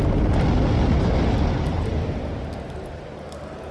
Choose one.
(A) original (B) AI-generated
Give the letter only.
A